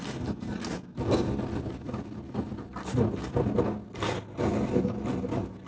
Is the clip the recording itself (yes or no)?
yes